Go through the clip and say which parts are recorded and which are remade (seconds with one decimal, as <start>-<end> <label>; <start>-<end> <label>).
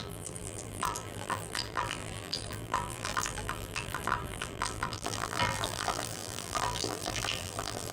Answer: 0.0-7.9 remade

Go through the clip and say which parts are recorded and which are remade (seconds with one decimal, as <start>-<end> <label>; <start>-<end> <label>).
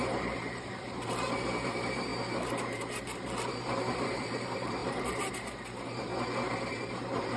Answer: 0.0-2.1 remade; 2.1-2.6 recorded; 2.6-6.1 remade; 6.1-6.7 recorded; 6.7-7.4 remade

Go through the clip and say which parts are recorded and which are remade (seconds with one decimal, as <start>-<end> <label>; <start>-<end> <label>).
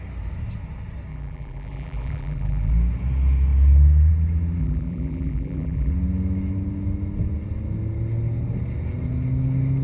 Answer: 0.0-1.1 recorded; 1.1-2.7 remade; 2.7-4.6 recorded; 4.6-5.9 remade; 5.9-9.8 recorded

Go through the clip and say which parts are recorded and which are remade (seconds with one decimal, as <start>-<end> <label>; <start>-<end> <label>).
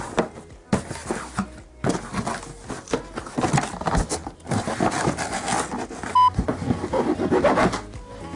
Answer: 0.0-6.5 recorded; 6.5-7.4 remade; 7.4-8.4 recorded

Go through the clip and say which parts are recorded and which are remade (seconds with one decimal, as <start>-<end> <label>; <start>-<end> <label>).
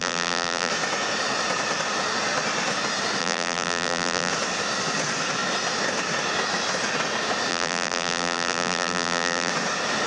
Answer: 0.0-0.7 remade; 0.7-3.2 recorded; 3.2-4.3 remade; 4.3-7.5 recorded; 7.5-9.5 remade; 9.5-10.1 recorded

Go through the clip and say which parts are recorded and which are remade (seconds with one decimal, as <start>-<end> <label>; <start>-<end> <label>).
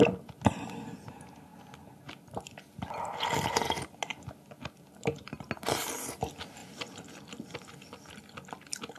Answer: 0.0-9.0 recorded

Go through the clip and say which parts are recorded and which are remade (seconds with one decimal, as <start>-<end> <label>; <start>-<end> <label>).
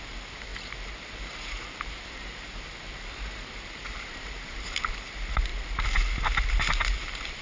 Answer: 0.0-5.5 remade; 5.5-7.0 recorded; 7.0-7.4 remade